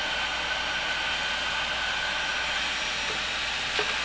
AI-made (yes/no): no